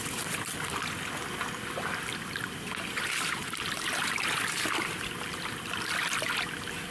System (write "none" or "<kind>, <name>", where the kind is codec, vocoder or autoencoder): none